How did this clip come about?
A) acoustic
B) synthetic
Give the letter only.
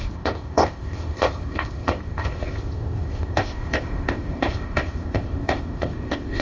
B